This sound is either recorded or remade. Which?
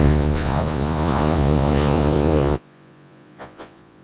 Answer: remade